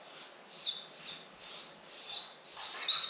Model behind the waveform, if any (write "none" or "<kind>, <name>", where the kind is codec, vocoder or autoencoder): none